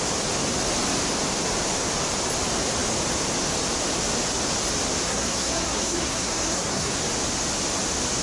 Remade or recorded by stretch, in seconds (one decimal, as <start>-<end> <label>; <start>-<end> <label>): 0.0-5.1 recorded; 5.1-6.9 remade; 6.9-8.2 recorded